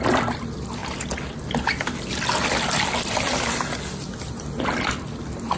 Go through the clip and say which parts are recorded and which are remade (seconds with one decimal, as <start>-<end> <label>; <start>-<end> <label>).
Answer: 0.0-5.6 recorded